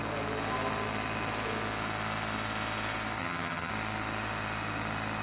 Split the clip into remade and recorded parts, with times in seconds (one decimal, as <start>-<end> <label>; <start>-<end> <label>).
0.0-3.2 recorded; 3.2-3.7 remade; 3.7-5.2 recorded